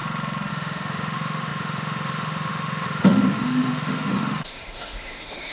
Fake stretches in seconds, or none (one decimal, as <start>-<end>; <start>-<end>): 0.5-5.5